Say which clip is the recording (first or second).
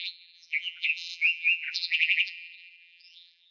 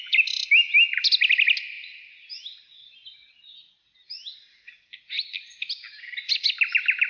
second